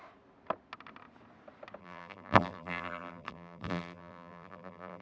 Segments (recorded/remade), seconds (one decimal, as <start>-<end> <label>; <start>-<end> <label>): 0.0-1.8 recorded; 1.8-5.0 remade